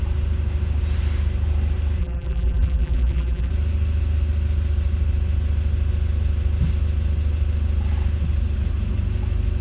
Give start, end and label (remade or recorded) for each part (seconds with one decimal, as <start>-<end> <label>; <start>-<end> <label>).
0.0-2.0 recorded; 2.0-3.5 remade; 3.5-9.6 recorded